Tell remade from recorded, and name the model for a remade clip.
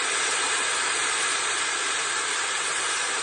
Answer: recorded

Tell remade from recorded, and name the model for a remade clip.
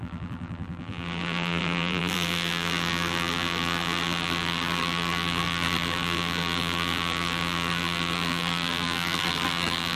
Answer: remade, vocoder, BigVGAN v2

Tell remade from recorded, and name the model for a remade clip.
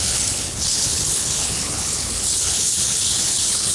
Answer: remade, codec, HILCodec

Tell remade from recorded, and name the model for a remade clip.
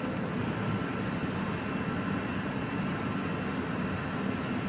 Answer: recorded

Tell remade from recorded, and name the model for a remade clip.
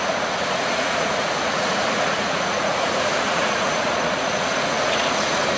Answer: remade, vocoder, Vocos